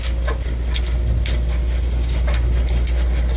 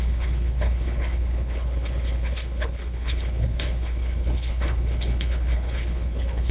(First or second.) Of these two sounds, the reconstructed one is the second